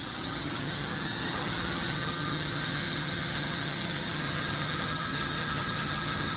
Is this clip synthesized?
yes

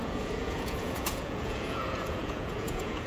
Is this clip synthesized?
yes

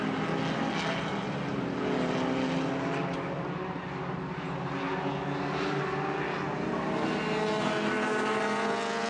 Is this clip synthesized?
no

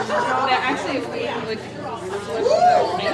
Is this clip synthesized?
no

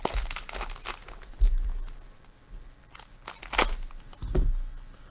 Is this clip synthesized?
no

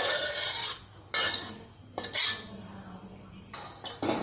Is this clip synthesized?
no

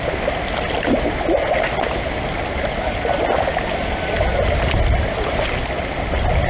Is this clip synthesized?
no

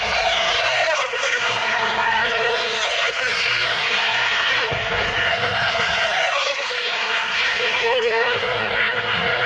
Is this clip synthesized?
yes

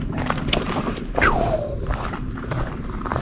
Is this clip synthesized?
yes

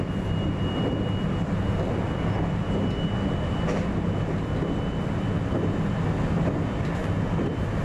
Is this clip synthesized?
no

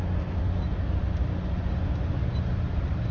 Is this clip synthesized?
no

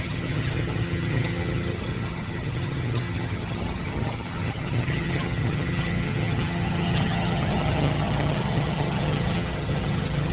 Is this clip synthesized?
yes